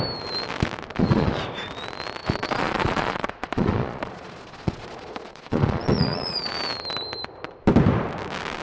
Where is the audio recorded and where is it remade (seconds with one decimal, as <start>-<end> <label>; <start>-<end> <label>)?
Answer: 0.0-0.9 recorded; 0.9-1.4 remade; 1.4-2.2 recorded; 2.2-6.5 remade; 6.5-8.6 recorded